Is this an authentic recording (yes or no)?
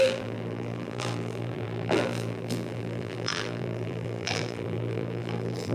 no